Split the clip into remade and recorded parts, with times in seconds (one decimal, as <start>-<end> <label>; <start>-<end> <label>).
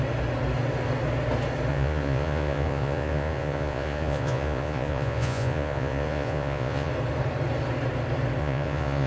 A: 0.0-1.7 recorded; 1.7-6.9 remade; 6.9-8.4 recorded; 8.4-9.1 remade